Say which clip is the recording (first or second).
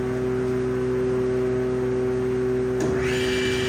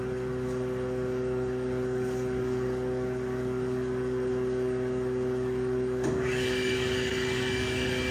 first